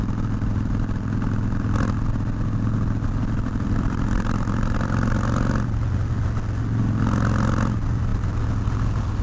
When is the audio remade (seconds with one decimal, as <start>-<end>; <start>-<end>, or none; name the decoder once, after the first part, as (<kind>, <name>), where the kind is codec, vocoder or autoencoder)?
none